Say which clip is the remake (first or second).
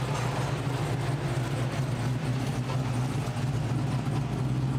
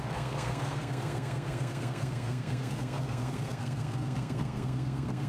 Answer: second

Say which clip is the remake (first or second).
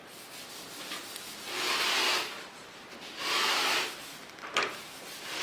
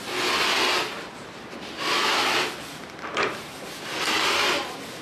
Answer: first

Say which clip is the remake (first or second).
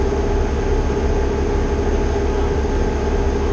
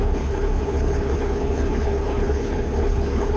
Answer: second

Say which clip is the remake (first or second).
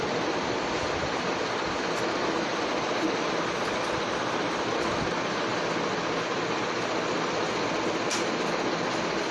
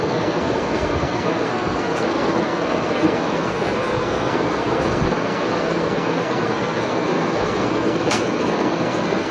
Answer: second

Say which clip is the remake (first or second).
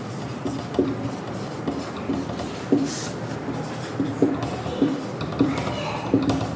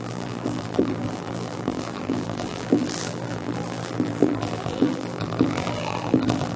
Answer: second